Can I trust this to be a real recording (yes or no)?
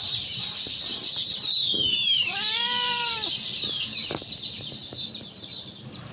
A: no